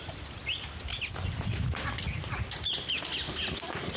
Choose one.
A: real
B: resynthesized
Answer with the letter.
A